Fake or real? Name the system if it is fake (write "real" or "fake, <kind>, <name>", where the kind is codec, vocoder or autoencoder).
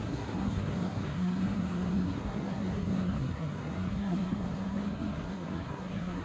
fake, codec, SNAC